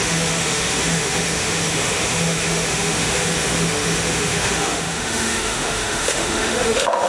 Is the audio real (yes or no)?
no